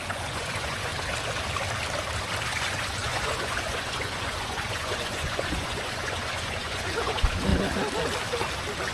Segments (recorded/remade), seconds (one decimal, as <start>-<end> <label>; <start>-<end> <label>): 0.0-0.9 remade; 0.9-2.5 recorded; 2.5-7.5 remade; 7.5-8.9 recorded